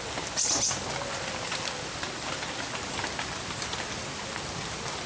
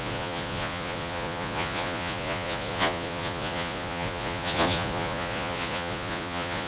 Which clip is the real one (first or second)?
first